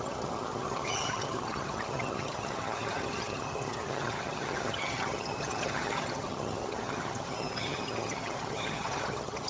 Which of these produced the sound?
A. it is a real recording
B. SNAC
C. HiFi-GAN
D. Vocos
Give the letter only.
C